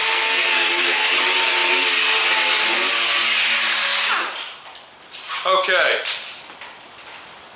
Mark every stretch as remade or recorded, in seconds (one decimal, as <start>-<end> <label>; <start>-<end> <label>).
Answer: 0.0-1.1 remade; 1.1-7.6 recorded